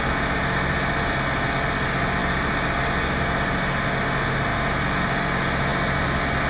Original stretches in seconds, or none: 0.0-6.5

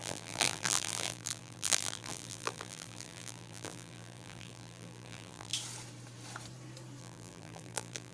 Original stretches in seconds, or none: 5.5-7.0

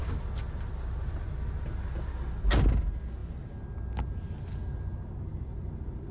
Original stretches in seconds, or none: 0.0-5.3